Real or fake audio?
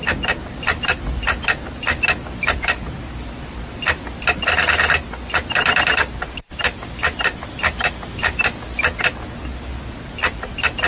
real